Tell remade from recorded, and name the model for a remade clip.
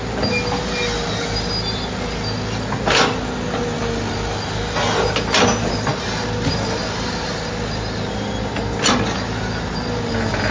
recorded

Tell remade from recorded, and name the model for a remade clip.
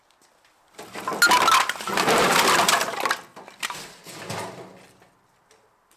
recorded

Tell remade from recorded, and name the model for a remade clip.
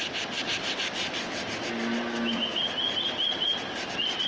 recorded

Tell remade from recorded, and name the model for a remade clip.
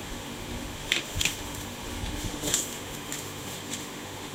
remade, autoencoder, DAC-VAE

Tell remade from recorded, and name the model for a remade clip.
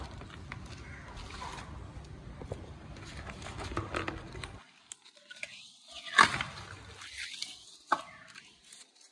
recorded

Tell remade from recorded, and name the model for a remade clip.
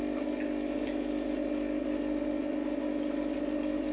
recorded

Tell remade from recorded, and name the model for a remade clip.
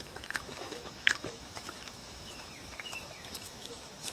remade, autoencoder, DAC-VAE